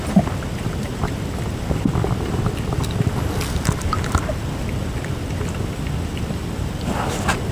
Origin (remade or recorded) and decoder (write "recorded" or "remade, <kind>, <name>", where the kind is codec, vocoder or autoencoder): remade, vocoder, BigVGAN v2